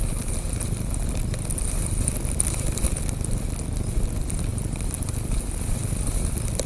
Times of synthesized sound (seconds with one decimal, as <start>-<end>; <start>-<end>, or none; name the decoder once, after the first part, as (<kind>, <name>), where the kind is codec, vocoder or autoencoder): 4.5-5.4 (vocoder, BigVGAN v2)